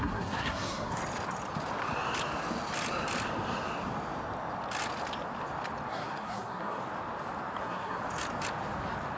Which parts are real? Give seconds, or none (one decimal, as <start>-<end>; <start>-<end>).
1.0-5.9; 6.8-7.6; 8.0-9.2